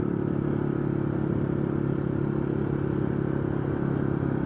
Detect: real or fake real